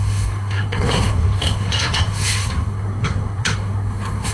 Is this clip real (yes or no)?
no